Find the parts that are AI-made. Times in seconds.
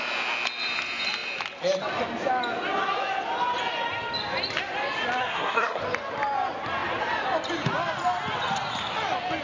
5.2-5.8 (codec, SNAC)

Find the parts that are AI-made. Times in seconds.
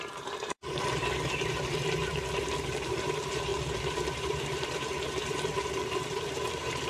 0.0-6.9 (vocoder, BigVGAN v2)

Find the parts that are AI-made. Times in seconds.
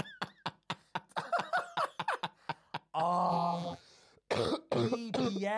3.3-3.8 (vocoder, BigVGAN v2)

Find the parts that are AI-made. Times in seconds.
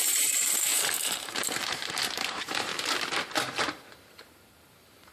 0.0-2.7 (vocoder, BigVGAN v2); 4.1-5.1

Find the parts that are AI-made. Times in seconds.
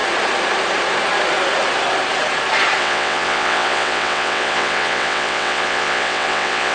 2.8-6.7 (vocoder, WaveNeXt)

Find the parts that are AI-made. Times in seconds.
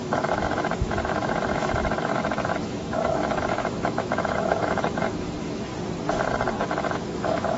0.0-5.7 (autoencoder, DAC-VAE); 6.7-7.6